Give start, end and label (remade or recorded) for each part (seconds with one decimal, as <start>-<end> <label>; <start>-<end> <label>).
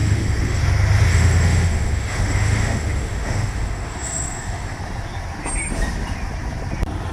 0.0-0.6 remade; 0.6-1.1 recorded; 1.1-4.8 remade; 4.8-7.1 recorded